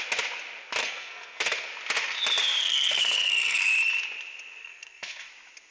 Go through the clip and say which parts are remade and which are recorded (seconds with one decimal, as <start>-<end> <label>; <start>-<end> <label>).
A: 0.0-0.8 recorded; 0.8-1.7 remade; 1.7-2.6 recorded; 2.6-3.7 remade; 3.7-4.6 recorded; 4.6-5.3 remade; 5.3-5.7 recorded